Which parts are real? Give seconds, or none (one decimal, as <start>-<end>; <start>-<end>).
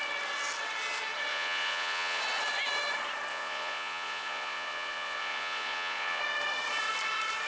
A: 0.0-1.3; 2.2-3.3; 6.2-7.5